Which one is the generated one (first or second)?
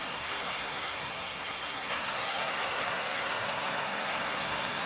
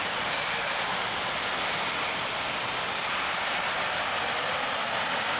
first